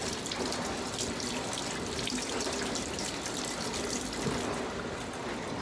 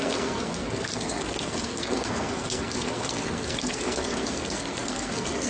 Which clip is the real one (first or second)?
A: first